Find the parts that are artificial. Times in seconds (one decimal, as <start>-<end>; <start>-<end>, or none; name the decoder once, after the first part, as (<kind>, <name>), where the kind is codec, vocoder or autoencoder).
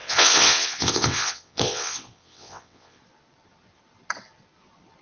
0.0-3.0 (vocoder, WaveNeXt)